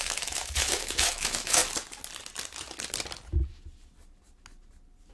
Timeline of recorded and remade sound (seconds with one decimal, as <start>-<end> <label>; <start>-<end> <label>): 0.0-1.6 remade; 1.6-5.1 recorded

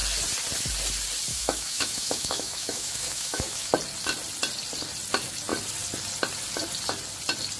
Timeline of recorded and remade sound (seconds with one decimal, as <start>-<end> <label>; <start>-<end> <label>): 0.0-1.3 recorded; 1.3-3.7 remade; 3.7-7.6 recorded

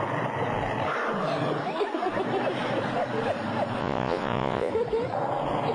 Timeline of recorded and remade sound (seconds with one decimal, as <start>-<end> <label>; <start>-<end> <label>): 0.0-3.8 recorded; 3.8-4.7 remade; 4.7-5.7 recorded